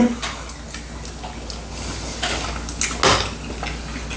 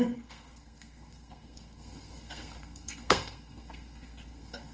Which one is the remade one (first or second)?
second